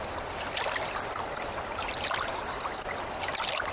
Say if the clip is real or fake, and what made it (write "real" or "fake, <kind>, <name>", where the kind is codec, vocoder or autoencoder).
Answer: real